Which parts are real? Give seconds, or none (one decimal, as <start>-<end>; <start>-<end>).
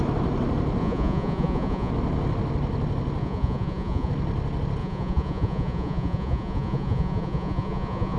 0.0-0.8; 1.9-3.2; 4.1-4.8